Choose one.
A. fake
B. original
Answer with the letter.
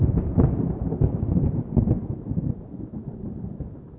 A